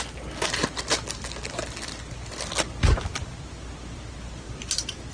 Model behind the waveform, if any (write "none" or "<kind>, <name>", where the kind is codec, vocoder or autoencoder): none